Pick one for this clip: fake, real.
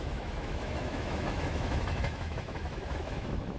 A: fake